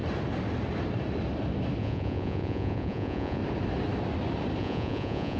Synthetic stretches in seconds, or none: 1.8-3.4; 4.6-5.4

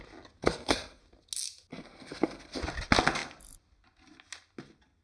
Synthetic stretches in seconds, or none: 0.4-1.0; 1.7-2.6